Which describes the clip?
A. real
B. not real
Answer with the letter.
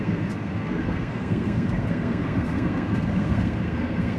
B